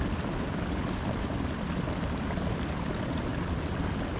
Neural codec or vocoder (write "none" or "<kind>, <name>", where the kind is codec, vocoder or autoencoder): none